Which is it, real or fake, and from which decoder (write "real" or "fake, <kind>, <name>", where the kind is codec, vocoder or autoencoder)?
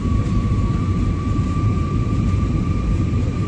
fake, vocoder, BigVGAN v2